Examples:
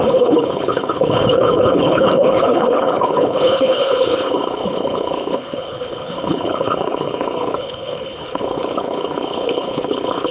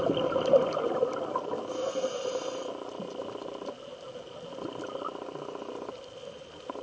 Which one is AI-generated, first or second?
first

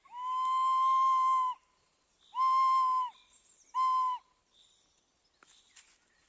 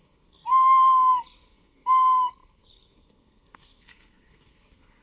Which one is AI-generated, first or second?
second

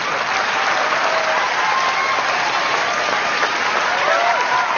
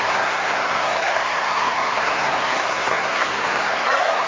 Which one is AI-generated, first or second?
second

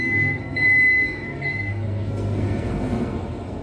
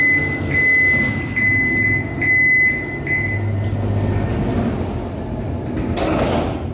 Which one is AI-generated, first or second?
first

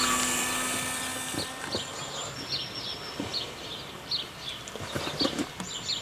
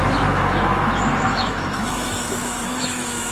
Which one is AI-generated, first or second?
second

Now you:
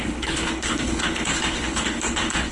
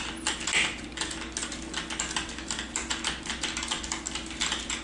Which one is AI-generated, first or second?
first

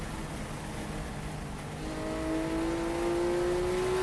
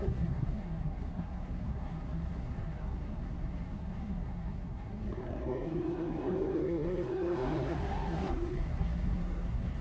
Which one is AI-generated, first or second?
second